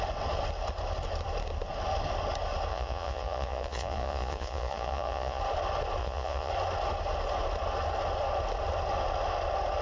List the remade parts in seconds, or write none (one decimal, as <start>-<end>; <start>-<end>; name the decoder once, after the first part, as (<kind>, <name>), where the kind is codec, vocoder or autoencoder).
2.7-5.4 (vocoder, Vocos); 6.0-6.5